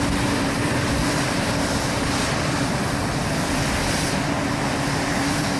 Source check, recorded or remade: remade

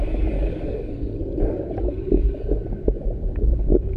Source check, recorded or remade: remade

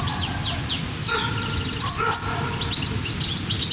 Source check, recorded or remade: remade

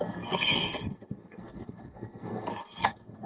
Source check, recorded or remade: remade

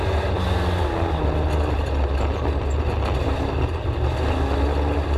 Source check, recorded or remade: recorded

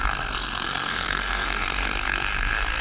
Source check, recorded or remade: remade